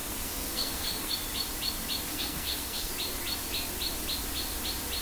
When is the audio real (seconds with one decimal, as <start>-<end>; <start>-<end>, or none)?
1.1-2.1; 2.9-5.0